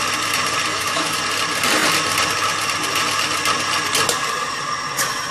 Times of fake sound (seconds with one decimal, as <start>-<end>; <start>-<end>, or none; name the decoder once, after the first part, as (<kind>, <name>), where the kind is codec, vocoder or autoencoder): 0.7-1.2 (autoencoder, DAC-VAE)